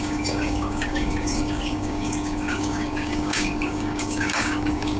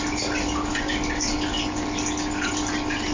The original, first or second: second